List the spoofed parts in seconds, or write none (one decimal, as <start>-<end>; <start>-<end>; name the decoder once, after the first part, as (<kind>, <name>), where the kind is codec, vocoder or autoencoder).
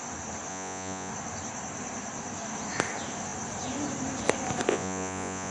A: 0.5-1.1 (vocoder, Vocos); 4.7-5.5